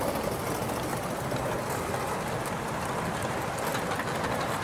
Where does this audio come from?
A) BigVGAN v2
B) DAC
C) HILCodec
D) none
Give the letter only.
D